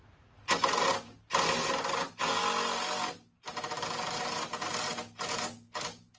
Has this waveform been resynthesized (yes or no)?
no